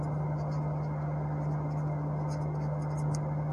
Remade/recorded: recorded